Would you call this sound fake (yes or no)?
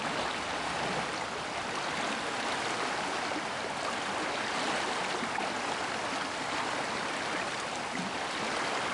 no